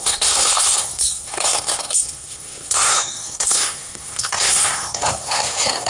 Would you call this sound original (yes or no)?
no